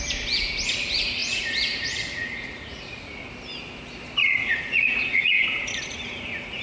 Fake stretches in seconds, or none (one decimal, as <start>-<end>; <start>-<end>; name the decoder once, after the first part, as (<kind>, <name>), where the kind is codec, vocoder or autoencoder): 1.2-3.3 (vocoder, Vocos); 4.2-6.6